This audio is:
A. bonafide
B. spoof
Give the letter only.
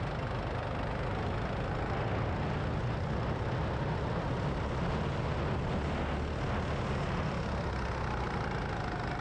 A